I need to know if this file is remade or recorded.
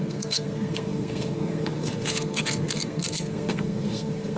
remade